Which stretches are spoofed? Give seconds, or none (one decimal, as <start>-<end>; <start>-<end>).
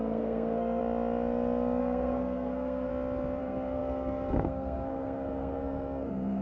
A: 0.0-0.8; 1.8-2.9; 3.4-6.4